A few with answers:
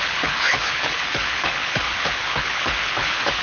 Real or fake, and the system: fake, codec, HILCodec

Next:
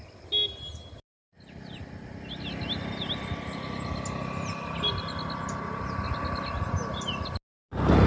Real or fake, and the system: real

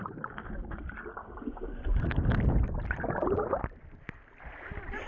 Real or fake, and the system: real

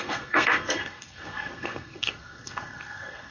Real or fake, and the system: fake, codec, SNAC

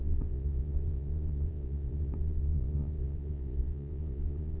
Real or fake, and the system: fake, vocoder, Vocos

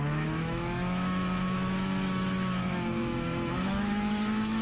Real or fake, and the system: fake, autoencoder, DAC-VAE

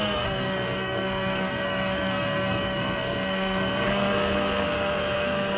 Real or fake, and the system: fake, codec, SNAC